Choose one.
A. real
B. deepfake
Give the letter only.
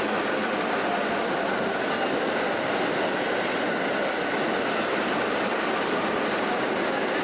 A